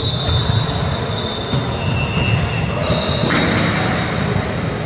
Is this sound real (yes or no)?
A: yes